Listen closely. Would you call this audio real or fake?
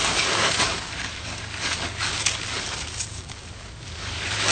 fake